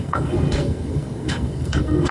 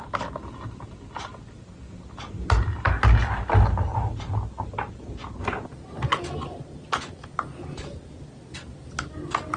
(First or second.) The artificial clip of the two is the first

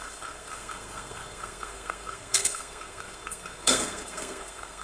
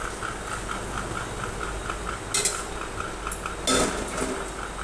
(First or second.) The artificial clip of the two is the first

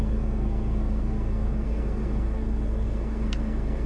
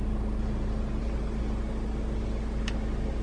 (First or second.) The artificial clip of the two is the first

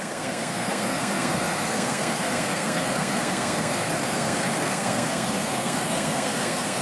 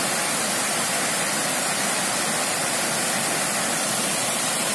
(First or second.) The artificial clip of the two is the first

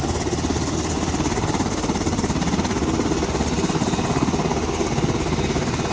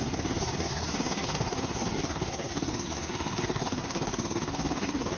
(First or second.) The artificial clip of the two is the second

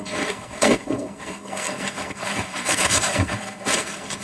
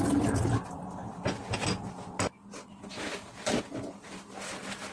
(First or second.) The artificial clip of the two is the first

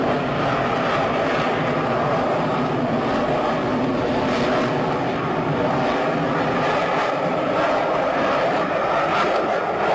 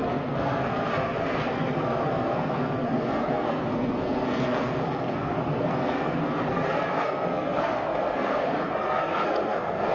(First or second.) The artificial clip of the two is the second